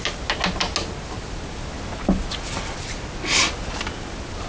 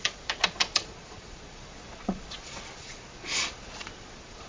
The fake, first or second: second